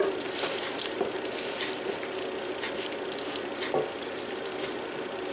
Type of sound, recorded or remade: recorded